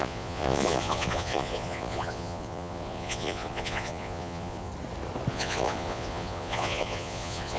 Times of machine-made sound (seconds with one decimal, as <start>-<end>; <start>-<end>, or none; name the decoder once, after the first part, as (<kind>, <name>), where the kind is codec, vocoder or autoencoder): 0.0-4.7 (vocoder, Vocos); 5.3-7.6

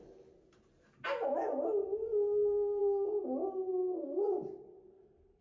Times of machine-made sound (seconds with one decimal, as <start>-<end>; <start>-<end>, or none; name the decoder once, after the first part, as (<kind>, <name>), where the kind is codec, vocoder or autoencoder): none

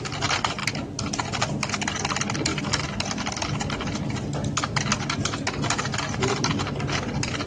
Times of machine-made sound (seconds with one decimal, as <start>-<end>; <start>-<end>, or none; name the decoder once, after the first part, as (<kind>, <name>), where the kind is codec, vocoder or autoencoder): none

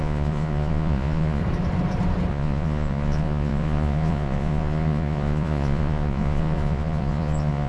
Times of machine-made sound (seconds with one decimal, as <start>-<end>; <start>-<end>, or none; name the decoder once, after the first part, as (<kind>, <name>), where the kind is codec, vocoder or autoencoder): 0.0-1.4 (vocoder, Vocos); 2.3-7.7

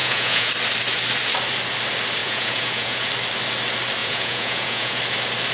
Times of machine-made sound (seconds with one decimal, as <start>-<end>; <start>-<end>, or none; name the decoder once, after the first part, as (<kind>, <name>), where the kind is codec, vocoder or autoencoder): 0.0-0.5 (vocoder, Vocos); 2.2-3.1; 4.0-5.0

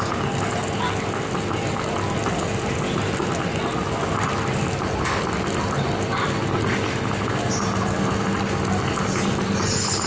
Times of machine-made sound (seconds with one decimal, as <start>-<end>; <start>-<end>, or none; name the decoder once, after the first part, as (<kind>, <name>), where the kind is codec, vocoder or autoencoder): none

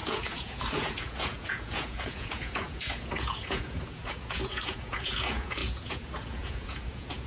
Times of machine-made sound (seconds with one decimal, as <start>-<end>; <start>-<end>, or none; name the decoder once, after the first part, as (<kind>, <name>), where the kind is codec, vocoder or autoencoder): 0.0-7.3 (vocoder, Vocos)